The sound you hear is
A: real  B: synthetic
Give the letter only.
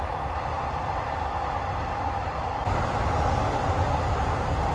A